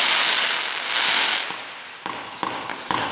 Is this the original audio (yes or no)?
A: yes